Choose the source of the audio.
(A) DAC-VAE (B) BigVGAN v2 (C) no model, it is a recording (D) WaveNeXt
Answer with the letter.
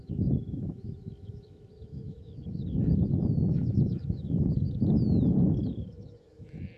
A